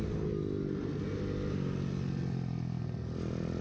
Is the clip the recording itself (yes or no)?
yes